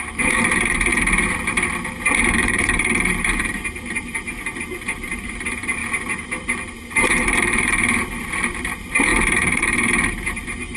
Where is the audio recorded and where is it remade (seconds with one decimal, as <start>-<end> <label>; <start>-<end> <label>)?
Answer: 0.0-0.9 remade; 0.9-2.3 recorded; 2.3-5.8 remade; 5.8-6.4 recorded; 6.4-10.8 remade